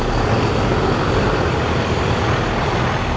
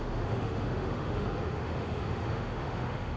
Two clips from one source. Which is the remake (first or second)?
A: second